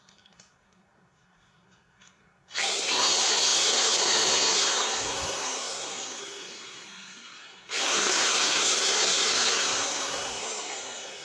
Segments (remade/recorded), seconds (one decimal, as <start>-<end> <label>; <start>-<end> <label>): 0.0-11.2 remade